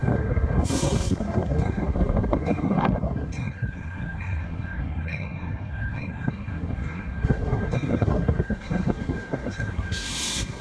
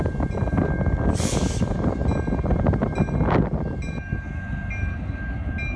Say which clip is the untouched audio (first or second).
second